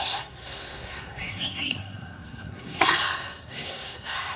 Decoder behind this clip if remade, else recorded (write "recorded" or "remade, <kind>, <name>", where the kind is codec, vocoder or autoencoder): remade, codec, SNAC